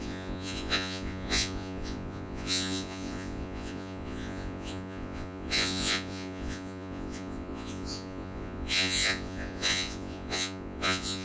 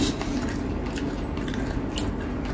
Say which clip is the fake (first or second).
first